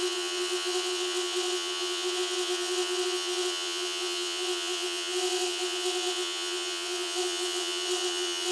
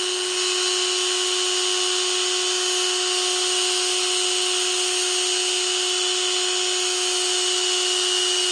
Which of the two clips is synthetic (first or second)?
first